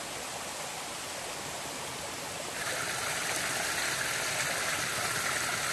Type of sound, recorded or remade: recorded